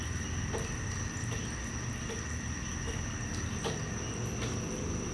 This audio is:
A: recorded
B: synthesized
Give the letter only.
A